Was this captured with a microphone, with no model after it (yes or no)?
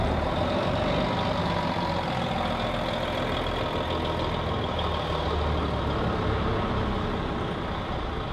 yes